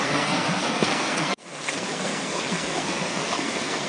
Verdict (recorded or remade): remade